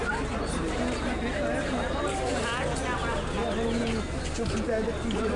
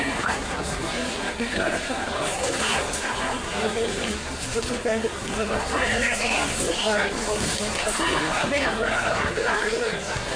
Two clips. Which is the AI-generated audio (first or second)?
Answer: second